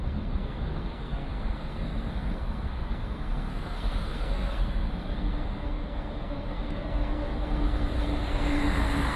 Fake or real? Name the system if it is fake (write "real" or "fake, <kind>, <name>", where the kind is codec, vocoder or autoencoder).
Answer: fake, codec, SNAC